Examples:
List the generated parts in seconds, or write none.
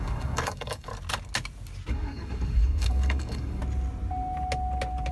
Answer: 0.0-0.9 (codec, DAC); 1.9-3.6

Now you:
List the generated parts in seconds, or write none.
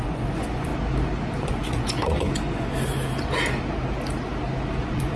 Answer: 0.0-0.7 (vocoder, Vocos); 1.4-2.7; 4.8-5.2